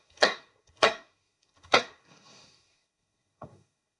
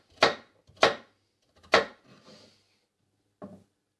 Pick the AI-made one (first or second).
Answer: first